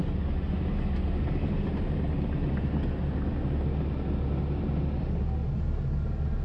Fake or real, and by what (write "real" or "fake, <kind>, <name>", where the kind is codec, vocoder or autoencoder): real